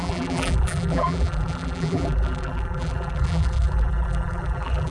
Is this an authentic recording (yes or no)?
no